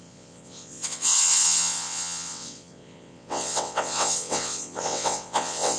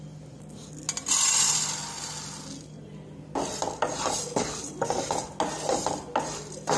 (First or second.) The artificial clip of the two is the first